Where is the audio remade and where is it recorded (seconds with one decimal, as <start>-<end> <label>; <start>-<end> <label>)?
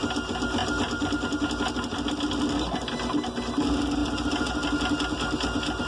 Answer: 0.0-5.9 recorded